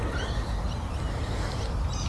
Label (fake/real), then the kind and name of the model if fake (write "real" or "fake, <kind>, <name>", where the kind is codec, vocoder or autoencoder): real